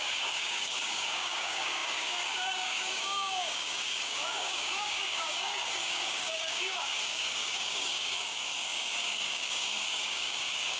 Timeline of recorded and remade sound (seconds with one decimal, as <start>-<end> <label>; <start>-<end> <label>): 0.0-10.8 remade